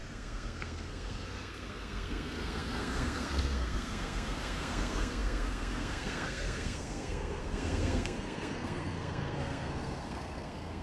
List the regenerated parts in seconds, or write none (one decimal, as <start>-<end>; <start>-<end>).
0.0-10.8